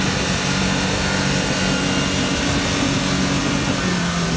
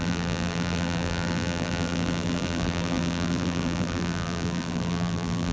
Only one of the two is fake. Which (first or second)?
second